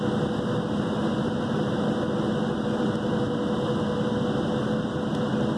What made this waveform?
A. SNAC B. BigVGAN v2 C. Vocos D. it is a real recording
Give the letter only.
D